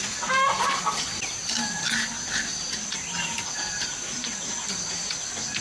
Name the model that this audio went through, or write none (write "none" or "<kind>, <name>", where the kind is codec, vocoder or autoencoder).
none